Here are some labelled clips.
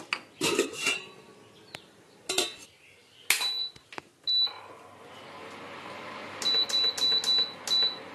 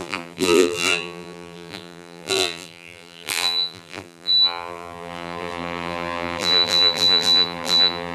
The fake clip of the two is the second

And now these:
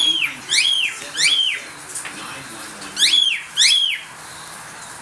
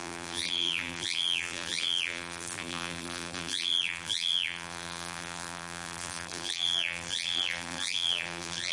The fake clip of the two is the second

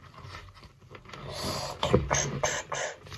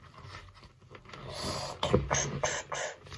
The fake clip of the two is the first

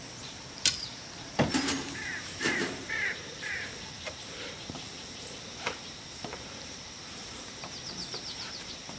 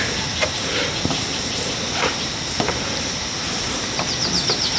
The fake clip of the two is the first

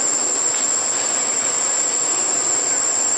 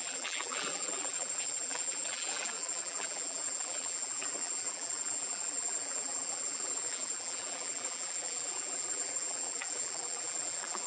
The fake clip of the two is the second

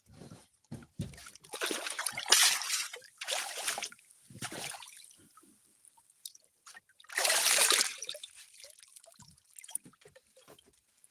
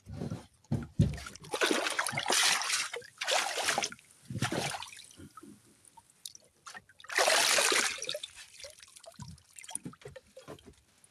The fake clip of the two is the first